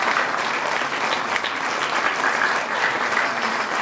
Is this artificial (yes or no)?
no